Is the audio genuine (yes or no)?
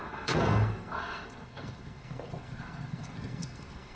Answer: no